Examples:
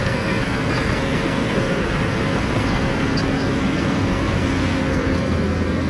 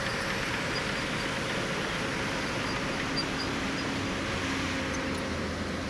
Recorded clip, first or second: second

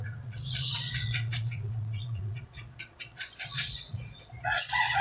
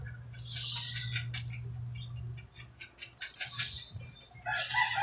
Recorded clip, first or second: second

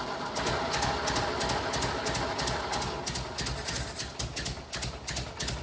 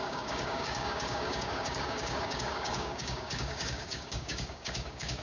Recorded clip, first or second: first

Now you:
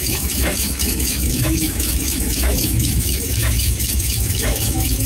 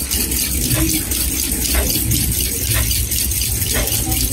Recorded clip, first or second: second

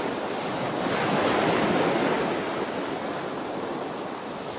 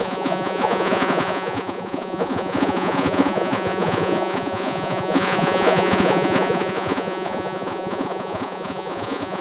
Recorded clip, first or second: first